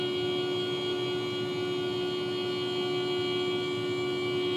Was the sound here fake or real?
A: real